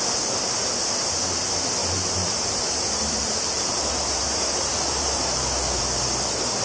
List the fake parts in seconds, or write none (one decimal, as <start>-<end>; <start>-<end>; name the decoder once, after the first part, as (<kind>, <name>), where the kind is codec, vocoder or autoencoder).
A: 1.8-5.8 (vocoder, BigVGAN v2)